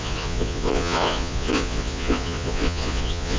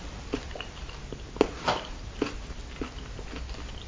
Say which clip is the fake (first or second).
first